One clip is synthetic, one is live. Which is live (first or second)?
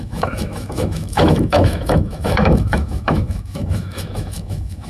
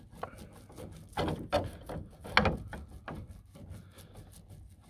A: second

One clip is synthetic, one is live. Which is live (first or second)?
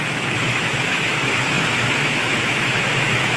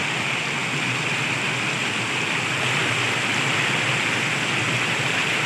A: second